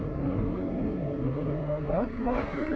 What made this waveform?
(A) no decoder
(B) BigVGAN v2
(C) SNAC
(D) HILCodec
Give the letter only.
C